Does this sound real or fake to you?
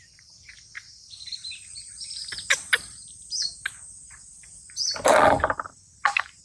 real